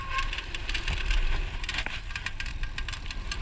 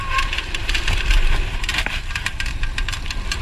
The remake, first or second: second